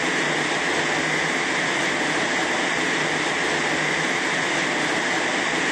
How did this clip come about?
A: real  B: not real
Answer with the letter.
A